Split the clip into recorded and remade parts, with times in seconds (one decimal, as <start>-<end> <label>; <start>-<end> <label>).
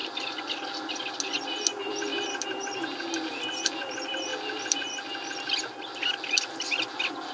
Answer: 0.0-7.3 recorded